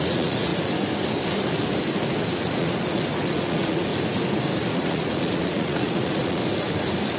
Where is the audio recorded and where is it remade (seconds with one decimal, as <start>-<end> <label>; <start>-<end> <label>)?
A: 0.0-0.5 remade; 0.5-2.2 recorded; 2.2-3.9 remade; 3.9-4.6 recorded; 4.6-6.4 remade; 6.4-7.2 recorded